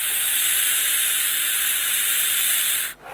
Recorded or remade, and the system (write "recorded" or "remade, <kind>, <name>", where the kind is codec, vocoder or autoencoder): recorded